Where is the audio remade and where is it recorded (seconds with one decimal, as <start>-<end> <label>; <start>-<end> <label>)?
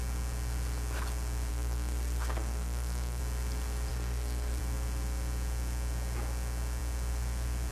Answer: 0.0-1.5 recorded; 1.5-3.2 remade; 3.2-3.9 recorded; 3.9-4.6 remade; 4.6-7.7 recorded